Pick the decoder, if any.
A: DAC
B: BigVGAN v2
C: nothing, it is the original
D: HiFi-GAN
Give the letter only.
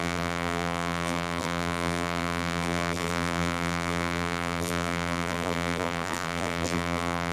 B